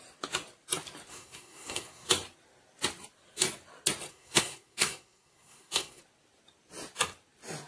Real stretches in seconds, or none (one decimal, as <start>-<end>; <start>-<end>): 0.0-1.1; 2.1-4.1; 6.0-7.7